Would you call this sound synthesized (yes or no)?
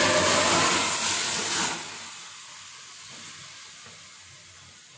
no